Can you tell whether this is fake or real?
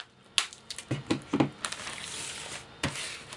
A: real